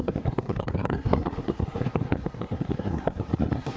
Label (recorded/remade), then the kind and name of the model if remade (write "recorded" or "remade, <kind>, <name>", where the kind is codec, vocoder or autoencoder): remade, codec, SNAC